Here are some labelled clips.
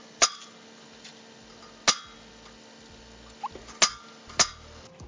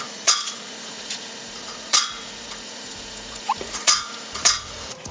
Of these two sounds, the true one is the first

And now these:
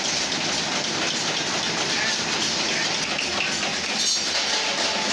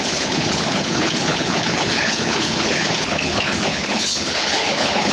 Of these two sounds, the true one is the first